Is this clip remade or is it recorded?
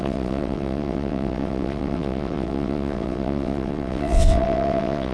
remade